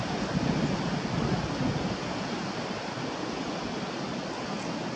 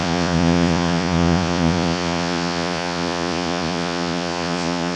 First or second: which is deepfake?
second